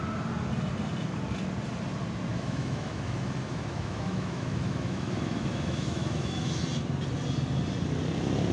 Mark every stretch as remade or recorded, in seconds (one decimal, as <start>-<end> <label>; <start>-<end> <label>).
0.0-2.3 recorded; 2.3-6.6 remade; 6.6-8.5 recorded